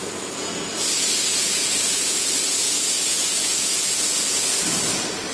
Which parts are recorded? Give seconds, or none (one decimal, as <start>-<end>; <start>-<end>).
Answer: 0.6-1.3; 4.5-5.3